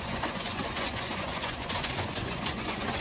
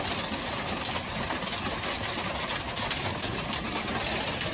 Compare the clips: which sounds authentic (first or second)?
second